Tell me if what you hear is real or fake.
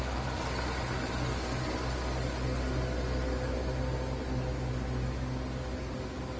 real